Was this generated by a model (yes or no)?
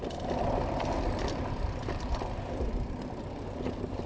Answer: yes